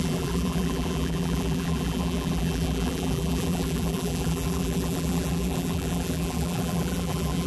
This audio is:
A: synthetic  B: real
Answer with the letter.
A